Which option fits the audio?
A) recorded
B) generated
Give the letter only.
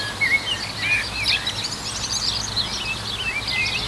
A